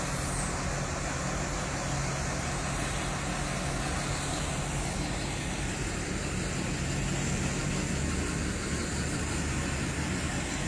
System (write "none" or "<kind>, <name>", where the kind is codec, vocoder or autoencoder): none